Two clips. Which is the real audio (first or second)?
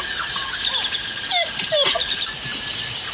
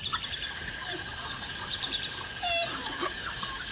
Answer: first